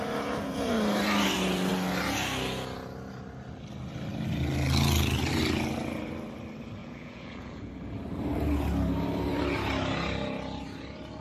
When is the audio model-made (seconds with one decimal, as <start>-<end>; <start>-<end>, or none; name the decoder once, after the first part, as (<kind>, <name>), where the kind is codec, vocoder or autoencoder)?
6.8-7.7 (vocoder, Vocos)